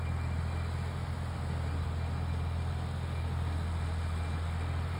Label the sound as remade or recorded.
recorded